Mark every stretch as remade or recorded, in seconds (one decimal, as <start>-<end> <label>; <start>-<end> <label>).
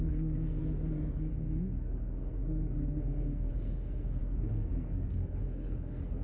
0.0-0.6 remade; 0.6-1.3 recorded; 1.3-6.2 remade